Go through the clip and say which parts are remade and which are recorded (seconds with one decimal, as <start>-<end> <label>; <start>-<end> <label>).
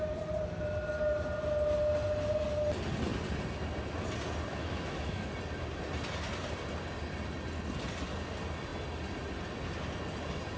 0.0-4.5 recorded; 4.5-5.3 remade; 5.3-10.6 recorded